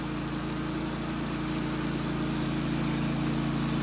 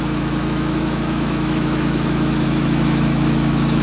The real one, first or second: first